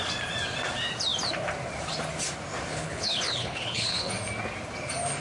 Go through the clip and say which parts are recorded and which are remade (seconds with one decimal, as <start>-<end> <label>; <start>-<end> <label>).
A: 0.0-2.7 recorded; 2.7-4.1 remade; 4.1-5.2 recorded